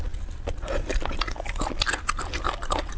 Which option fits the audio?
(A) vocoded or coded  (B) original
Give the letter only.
B